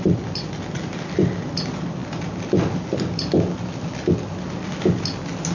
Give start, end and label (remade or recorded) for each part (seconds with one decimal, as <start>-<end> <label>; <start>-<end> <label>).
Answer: 0.0-5.5 recorded